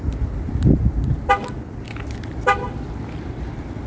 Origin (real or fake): real